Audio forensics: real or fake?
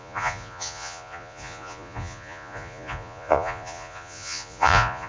fake